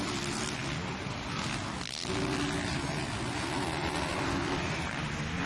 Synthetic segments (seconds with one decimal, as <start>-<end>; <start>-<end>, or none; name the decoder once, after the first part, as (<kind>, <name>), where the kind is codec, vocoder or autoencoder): none